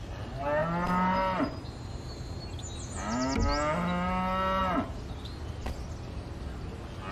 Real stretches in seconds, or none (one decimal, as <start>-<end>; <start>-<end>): 0.0-7.1